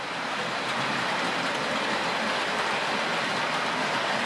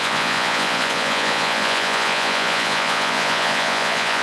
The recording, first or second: first